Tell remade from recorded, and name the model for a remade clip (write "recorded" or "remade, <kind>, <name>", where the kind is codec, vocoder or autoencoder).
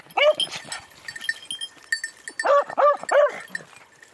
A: recorded